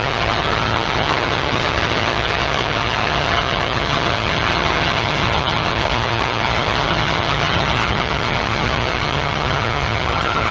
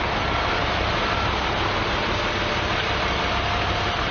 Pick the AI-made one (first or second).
first